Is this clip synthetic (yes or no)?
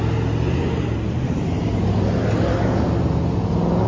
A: no